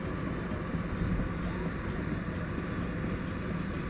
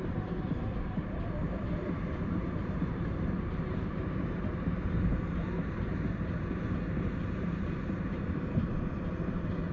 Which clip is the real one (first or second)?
first